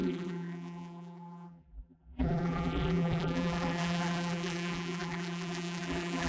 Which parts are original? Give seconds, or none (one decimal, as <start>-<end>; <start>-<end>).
none